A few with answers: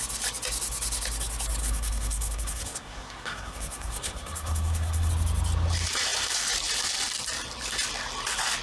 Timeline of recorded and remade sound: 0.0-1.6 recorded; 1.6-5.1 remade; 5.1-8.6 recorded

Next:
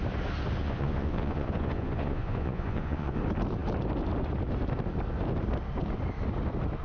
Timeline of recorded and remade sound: 0.0-0.6 recorded; 0.6-3.2 remade; 3.2-6.8 recorded

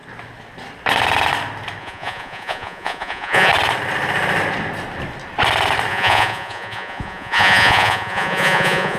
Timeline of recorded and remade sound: 0.0-1.8 recorded; 1.8-3.5 remade; 3.5-5.9 recorded; 5.9-9.0 remade

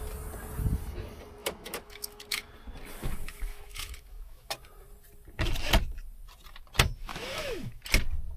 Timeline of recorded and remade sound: 0.0-1.4 recorded; 1.4-2.5 remade; 2.5-3.0 recorded; 3.0-4.5 remade; 4.5-7.1 recorded; 7.1-7.8 remade; 7.8-8.4 recorded

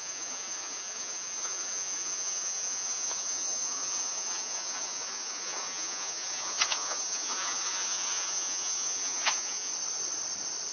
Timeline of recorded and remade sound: 0.0-9.7 remade; 9.7-10.7 recorded

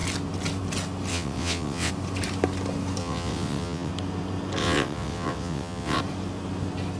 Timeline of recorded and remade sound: 0.0-1.1 recorded; 1.1-1.9 remade; 1.9-3.0 recorded; 3.0-3.9 remade; 3.9-4.6 recorded; 4.6-6.0 remade; 6.0-7.0 recorded

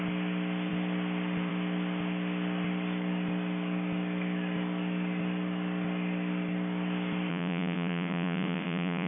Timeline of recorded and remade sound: 0.0-7.3 recorded; 7.3-9.1 remade